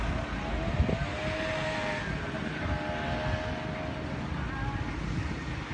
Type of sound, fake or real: real